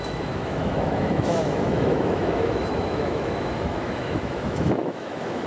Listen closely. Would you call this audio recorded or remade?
remade